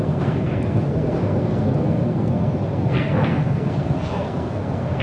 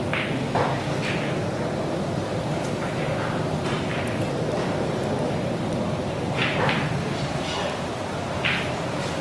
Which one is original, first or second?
second